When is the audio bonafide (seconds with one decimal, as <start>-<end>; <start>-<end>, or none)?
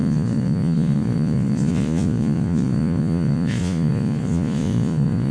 none